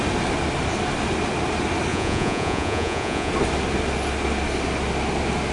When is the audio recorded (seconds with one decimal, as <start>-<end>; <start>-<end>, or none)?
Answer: 0.0-1.9; 3.3-5.5